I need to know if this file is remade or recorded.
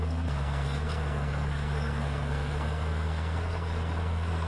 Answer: remade